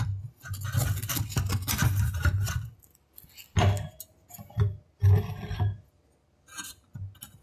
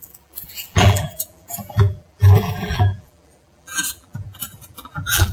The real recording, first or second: first